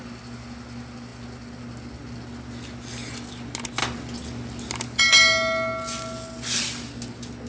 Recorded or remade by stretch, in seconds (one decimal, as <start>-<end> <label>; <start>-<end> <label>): 0.0-7.5 recorded